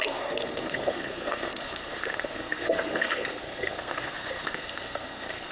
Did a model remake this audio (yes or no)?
yes